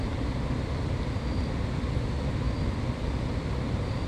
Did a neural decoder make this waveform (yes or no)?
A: no